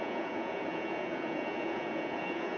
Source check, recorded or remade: remade